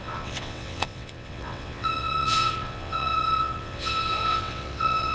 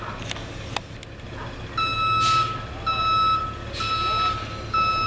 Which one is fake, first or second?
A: first